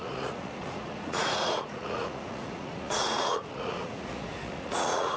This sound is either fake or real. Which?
fake